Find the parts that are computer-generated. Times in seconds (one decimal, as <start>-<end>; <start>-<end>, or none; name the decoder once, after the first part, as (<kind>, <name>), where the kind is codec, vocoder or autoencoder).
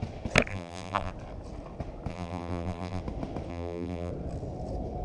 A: 0.5-1.1 (vocoder, BigVGAN v2); 2.1-3.0; 3.5-4.1